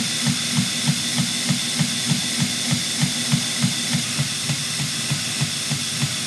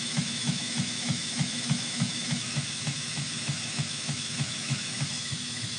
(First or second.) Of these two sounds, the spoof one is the second